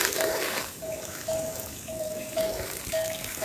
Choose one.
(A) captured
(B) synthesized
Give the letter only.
B